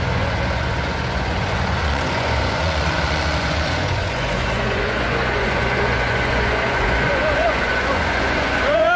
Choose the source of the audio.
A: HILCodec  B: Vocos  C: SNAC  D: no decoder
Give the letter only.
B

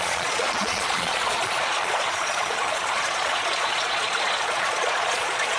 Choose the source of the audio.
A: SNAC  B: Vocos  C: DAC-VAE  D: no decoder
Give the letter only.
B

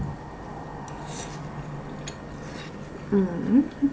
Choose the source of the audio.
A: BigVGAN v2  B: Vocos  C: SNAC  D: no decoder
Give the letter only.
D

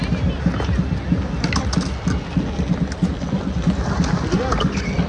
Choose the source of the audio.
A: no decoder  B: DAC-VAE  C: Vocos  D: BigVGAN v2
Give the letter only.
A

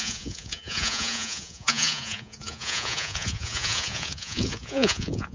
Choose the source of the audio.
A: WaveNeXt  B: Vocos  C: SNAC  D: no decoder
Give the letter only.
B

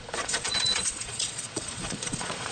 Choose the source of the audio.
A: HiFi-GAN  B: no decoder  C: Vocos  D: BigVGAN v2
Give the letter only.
C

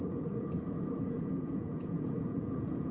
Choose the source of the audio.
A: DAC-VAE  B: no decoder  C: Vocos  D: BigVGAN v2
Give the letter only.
C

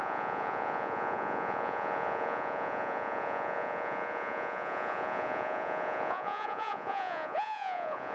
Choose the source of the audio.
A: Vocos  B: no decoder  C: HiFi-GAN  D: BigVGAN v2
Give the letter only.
A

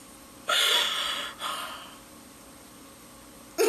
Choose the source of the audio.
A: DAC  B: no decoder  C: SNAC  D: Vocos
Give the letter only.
B